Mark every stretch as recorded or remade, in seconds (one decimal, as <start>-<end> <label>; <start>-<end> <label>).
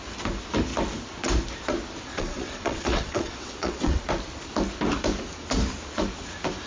0.0-2.1 recorded; 2.1-4.0 remade; 4.0-6.7 recorded